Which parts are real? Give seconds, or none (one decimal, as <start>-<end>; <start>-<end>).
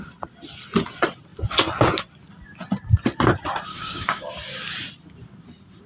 0.0-3.7; 4.3-5.9